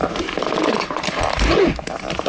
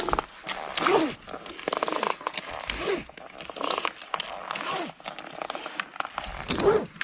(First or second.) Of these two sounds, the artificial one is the first